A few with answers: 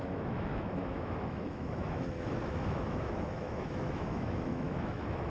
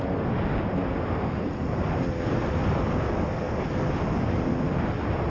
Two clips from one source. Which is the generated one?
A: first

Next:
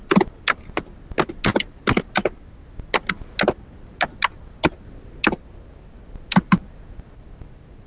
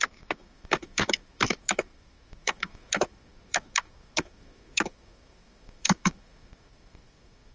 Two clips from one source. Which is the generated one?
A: second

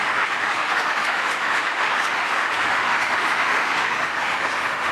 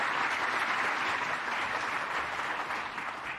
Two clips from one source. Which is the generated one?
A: first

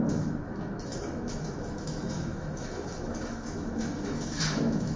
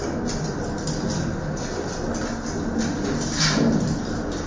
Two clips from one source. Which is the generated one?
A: first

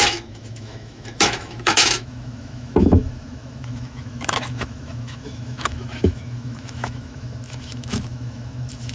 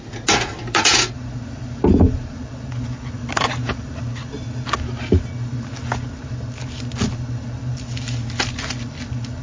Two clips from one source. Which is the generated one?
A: first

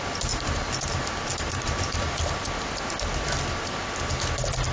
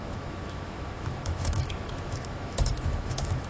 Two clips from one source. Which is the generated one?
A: second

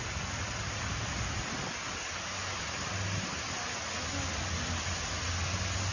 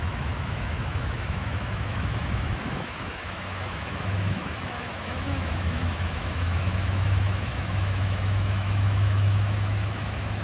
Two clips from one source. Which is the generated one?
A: second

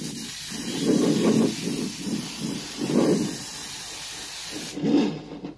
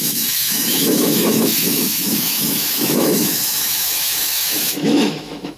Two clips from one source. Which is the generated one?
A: second